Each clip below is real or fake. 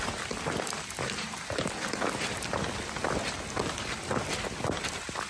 real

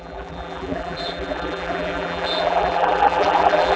fake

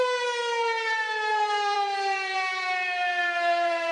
fake